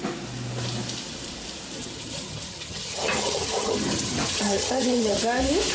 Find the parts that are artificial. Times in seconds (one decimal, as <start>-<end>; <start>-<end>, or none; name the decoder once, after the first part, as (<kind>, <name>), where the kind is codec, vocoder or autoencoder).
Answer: 1.8-5.2 (vocoder, HiFi-GAN)